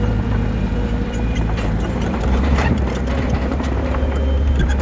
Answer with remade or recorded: remade